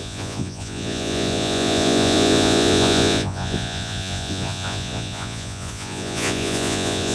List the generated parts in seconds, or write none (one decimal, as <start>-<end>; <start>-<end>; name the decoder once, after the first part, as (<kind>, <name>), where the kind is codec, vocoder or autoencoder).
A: 0.0-7.1 (vocoder, Vocos)